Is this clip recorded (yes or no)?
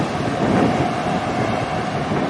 yes